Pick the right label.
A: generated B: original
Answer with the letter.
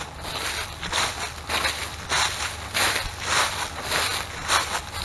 B